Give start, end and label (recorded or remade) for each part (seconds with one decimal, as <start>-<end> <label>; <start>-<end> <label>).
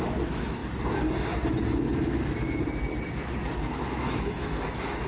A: 0.0-0.6 remade; 0.6-3.7 recorded; 3.7-5.1 remade